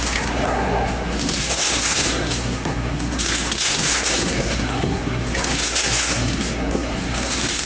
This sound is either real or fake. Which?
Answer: fake